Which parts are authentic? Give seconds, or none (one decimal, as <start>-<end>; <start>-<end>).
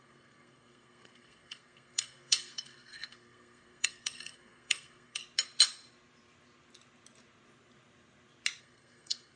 5.2-8.6